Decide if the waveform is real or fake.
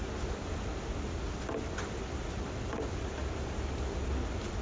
real